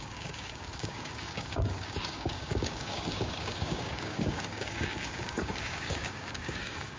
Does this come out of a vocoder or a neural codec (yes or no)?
yes